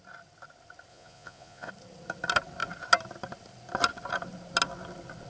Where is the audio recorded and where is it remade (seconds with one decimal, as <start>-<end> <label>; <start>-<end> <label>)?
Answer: 0.0-0.9 recorded; 0.9-1.7 remade; 1.7-5.3 recorded